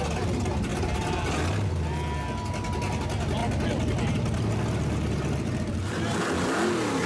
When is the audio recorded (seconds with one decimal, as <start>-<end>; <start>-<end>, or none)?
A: 0.0-7.1